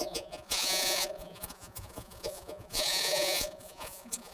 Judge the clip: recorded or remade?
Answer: remade